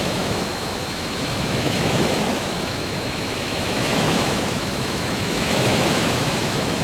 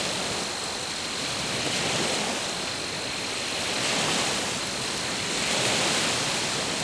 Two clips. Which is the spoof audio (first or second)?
first